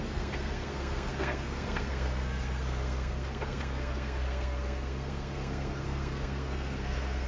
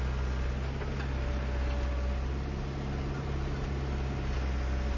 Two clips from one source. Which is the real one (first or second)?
second